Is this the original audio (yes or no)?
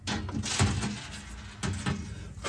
yes